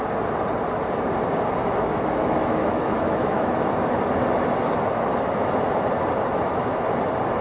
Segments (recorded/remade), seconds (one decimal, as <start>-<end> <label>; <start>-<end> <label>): 0.0-1.6 recorded; 1.6-3.7 remade; 3.7-7.4 recorded